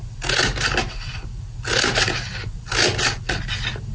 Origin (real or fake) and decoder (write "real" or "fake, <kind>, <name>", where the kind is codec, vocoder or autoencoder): real